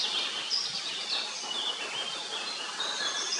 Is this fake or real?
real